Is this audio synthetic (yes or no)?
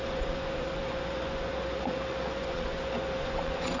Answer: yes